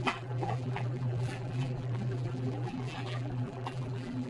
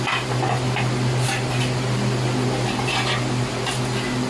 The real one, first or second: second